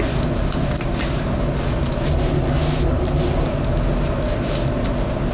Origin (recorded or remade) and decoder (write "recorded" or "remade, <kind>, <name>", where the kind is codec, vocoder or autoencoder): recorded